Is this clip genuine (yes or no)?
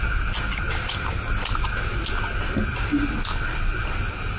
yes